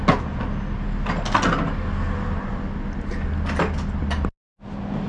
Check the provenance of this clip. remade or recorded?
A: recorded